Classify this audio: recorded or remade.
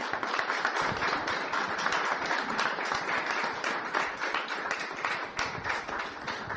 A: remade